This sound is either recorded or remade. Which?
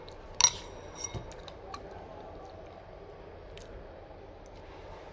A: recorded